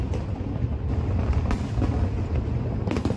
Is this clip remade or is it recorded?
recorded